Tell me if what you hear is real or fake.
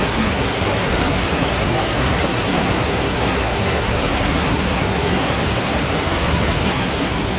fake